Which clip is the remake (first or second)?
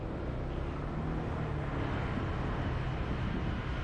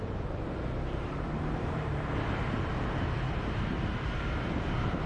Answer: second